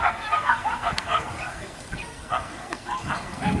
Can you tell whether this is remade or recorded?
remade